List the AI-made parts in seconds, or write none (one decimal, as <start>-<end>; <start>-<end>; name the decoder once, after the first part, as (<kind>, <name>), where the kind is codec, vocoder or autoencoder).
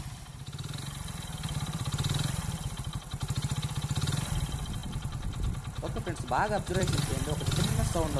0.0-3.5 (vocoder, BigVGAN v2); 4.2-4.8; 6.3-8.2